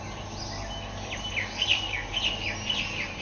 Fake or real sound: real